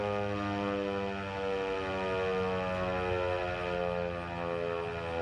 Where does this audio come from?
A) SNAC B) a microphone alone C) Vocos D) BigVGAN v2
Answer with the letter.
B